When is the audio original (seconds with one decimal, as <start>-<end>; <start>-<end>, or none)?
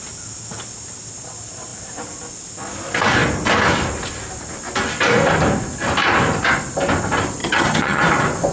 0.0-7.4; 8.0-8.5